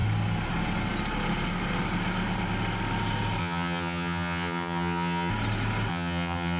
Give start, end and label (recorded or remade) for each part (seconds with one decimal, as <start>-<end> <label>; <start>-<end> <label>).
0.0-3.4 recorded; 3.4-5.3 remade; 5.3-5.9 recorded; 5.9-6.6 remade